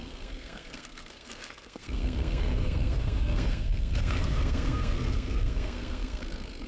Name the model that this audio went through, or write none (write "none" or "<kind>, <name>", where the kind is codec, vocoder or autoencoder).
codec, SNAC